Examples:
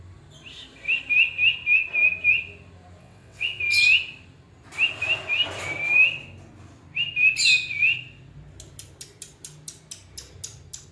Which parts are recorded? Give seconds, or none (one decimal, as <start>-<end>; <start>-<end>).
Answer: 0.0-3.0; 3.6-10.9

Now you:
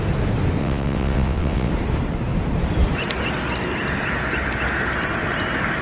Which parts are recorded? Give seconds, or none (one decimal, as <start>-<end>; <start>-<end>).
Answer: 0.0-0.6; 1.7-5.8

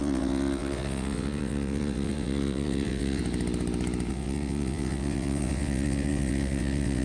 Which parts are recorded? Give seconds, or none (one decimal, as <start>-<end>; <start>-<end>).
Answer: 3.2-4.1

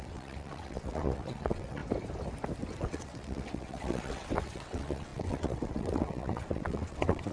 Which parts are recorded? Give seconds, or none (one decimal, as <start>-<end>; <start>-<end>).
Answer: 1.8-2.8